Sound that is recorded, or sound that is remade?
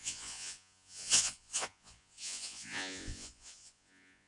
remade